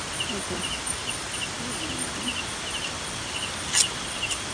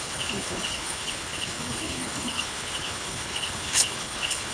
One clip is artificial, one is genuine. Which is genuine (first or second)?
first